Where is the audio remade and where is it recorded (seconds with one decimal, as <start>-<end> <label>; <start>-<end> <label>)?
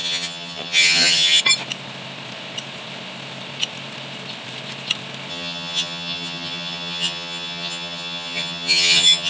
0.0-1.4 remade; 1.4-5.3 recorded; 5.3-9.3 remade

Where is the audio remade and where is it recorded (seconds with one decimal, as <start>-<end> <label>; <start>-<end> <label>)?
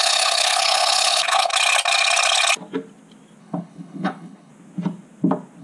0.0-1.5 remade; 1.5-3.4 recorded; 3.4-4.5 remade; 4.5-5.6 recorded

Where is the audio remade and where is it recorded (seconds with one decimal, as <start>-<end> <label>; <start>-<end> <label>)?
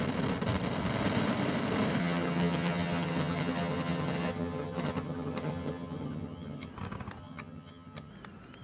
0.0-2.0 recorded; 2.0-6.7 remade; 6.7-7.2 recorded; 7.2-8.1 remade; 8.1-8.6 recorded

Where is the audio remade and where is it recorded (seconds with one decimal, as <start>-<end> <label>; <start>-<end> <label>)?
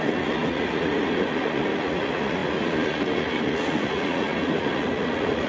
0.0-5.5 remade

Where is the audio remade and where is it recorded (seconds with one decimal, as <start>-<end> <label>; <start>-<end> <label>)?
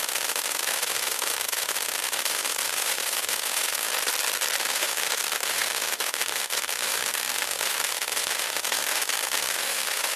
0.0-3.9 remade; 3.9-4.6 recorded; 4.6-10.2 remade